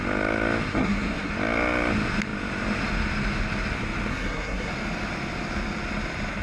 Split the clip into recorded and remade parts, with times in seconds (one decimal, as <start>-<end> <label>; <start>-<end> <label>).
0.0-0.7 recorded; 0.7-1.3 remade; 1.3-4.1 recorded; 4.1-4.7 remade; 4.7-6.4 recorded

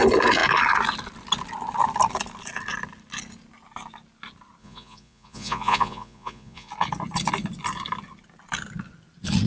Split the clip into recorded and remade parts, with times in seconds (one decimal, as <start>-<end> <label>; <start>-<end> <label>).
0.0-4.6 recorded; 4.6-6.7 remade; 6.7-9.5 recorded

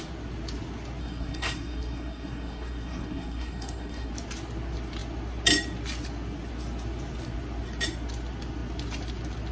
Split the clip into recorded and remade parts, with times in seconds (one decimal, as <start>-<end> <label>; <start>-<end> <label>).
0.0-1.0 recorded; 1.0-4.1 remade; 4.1-9.5 recorded

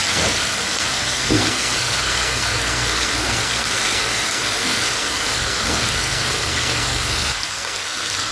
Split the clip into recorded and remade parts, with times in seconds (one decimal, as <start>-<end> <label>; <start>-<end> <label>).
0.0-8.3 remade